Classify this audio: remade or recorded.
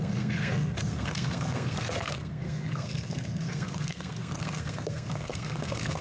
remade